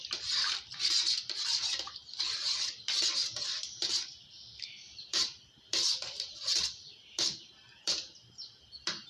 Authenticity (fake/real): fake